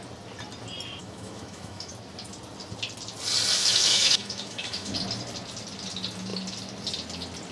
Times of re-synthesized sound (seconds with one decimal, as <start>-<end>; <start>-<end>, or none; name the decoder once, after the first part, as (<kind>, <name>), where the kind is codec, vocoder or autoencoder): 1.0-1.9 (autoencoder, DAC-VAE); 3.6-4.9